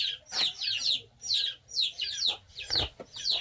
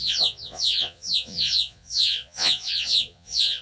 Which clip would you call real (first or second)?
first